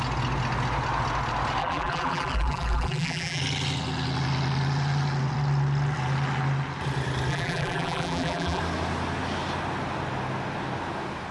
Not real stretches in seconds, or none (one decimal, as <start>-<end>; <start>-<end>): 1.6-3.4; 7.3-8.6